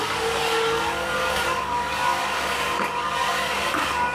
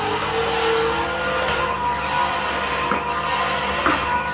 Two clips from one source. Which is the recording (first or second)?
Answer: second